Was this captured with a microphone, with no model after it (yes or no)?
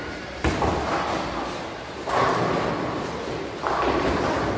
yes